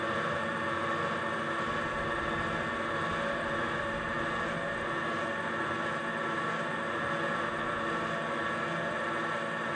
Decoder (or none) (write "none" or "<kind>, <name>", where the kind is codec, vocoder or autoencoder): none